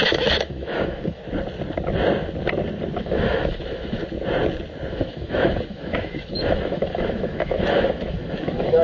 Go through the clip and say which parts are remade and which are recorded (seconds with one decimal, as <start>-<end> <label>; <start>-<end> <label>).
0.0-1.2 remade; 1.2-3.0 recorded; 3.0-4.0 remade; 4.0-4.9 recorded; 4.9-8.8 remade